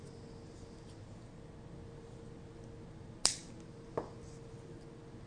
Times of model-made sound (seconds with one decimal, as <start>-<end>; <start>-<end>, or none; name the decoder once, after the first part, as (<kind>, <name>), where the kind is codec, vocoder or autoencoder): none

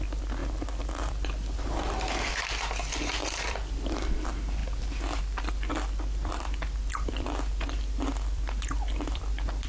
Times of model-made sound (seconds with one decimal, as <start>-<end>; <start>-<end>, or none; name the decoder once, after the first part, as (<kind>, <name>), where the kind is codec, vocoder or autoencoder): 0.0-9.7 (vocoder, BigVGAN v2)

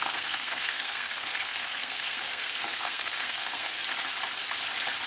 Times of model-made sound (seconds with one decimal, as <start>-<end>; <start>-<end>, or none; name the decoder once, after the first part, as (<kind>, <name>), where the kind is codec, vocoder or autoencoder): 0.0-3.8 (codec, SNAC)

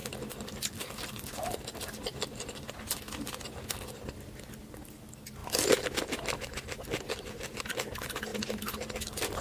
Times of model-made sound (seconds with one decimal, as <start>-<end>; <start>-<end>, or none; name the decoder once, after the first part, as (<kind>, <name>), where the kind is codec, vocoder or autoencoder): none